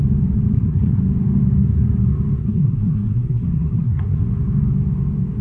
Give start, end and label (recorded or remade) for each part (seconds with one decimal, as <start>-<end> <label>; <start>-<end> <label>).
0.0-0.5 recorded; 0.5-1.0 remade; 1.0-2.4 recorded; 2.4-4.2 remade; 4.2-5.4 recorded